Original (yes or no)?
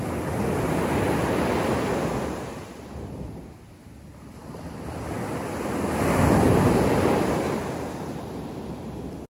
yes